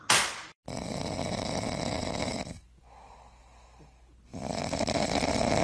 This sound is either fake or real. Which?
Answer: real